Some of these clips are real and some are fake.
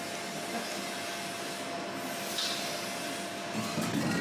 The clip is real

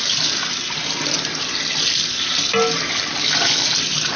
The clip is real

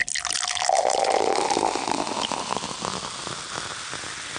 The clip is real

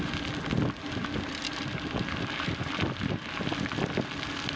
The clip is real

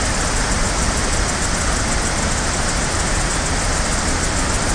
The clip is real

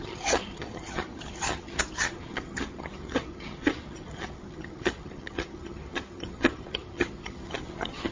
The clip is fake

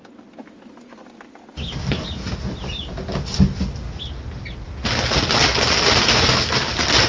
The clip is real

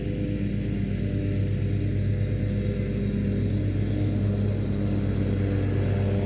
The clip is real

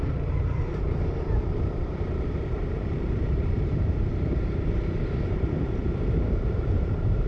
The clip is fake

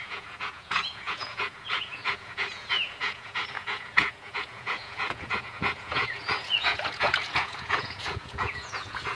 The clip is fake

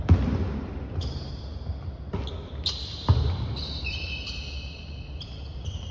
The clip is real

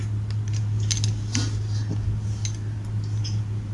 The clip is real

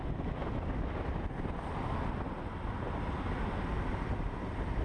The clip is real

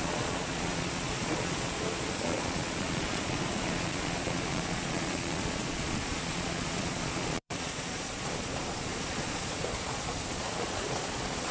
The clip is fake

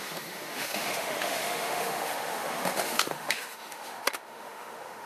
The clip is fake